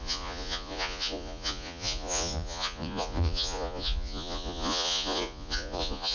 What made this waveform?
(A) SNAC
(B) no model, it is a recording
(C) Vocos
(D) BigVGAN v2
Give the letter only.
C